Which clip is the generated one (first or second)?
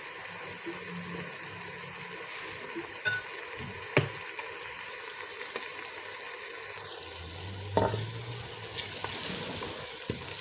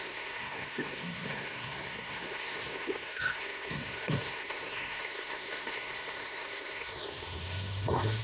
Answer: second